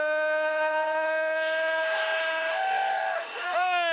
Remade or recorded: remade